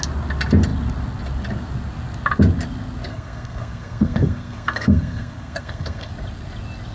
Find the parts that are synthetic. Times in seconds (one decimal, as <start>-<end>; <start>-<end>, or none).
3.1-6.1